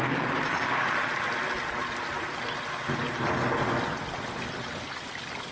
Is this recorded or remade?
recorded